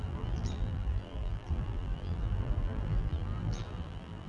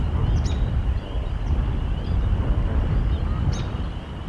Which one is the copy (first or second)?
first